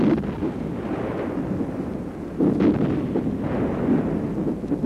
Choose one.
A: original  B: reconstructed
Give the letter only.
A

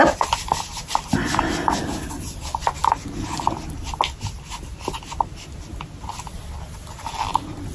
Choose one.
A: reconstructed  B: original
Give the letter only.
B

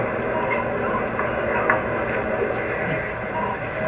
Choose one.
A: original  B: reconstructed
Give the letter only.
A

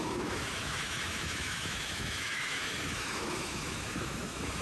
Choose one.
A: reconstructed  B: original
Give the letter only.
A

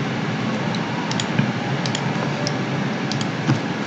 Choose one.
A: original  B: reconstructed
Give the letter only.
A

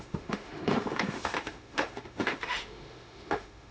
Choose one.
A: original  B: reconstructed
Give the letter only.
B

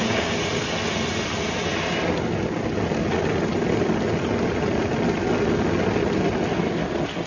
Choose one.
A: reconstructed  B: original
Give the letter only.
B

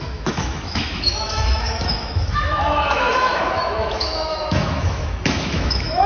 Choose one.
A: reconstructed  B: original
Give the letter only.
A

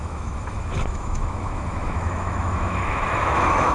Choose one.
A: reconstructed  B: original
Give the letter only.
A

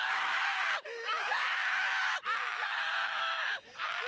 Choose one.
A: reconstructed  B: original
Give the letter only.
A